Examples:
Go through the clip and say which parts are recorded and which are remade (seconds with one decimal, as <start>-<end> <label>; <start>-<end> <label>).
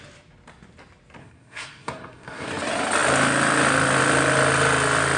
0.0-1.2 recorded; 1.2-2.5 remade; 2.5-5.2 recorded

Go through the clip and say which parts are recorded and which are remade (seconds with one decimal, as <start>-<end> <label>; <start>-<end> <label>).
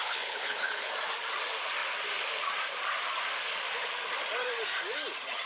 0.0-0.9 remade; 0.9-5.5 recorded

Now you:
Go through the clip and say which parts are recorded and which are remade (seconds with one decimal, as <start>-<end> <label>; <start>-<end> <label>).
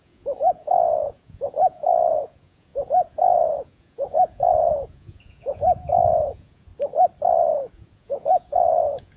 0.0-6.7 remade; 6.7-7.7 recorded; 7.7-9.2 remade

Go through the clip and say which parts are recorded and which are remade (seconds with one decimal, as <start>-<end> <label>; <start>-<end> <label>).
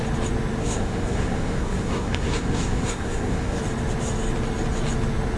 0.0-0.6 recorded; 0.6-3.6 remade; 3.6-5.4 recorded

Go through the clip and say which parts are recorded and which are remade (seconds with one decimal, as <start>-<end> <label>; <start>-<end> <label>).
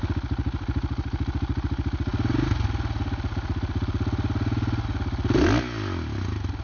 0.0-6.6 recorded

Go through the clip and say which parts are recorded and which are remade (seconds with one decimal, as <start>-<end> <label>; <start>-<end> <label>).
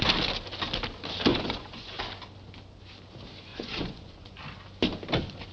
0.0-1.3 recorded; 1.3-2.0 remade; 2.0-3.5 recorded; 3.5-4.4 remade; 4.4-5.5 recorded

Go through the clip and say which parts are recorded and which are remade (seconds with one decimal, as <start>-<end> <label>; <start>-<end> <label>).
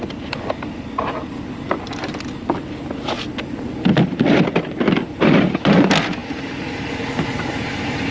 0.0-8.1 recorded